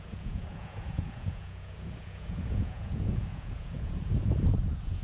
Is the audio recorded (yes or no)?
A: no